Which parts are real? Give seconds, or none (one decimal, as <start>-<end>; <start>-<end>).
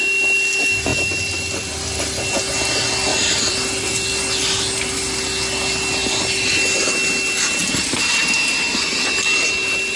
0.0-0.9; 2.2-3.1; 4.2-7.6; 8.4-10.0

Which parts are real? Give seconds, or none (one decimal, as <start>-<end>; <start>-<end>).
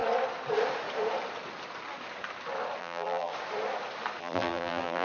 0.0-2.8; 3.3-4.2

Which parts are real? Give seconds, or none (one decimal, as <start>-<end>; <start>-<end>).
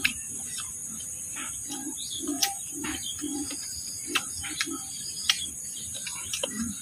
0.8-2.7; 3.3-4.1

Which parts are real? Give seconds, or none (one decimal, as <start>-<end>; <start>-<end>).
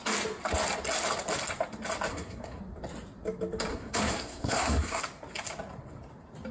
0.0-2.1; 2.6-3.7; 5.0-6.5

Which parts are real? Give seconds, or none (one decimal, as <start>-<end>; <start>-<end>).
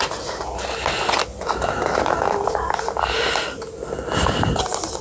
0.0-5.0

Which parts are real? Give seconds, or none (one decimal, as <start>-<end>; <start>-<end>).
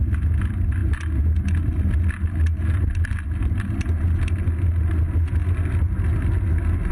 0.0-6.9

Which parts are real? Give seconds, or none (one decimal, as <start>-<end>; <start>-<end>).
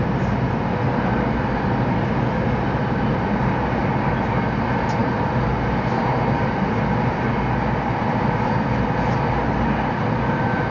0.0-10.7